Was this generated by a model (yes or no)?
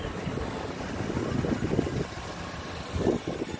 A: no